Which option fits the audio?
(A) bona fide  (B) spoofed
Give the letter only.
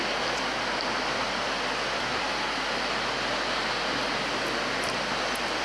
A